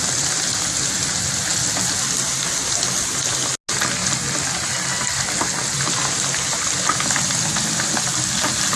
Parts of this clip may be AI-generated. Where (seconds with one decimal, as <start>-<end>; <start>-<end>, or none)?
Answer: none